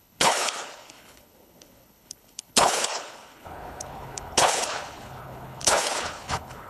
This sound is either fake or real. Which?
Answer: fake